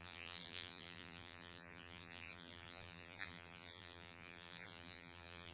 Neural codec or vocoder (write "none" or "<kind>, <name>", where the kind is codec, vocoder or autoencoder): vocoder, BigVGAN v2